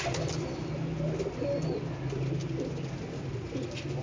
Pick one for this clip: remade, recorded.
recorded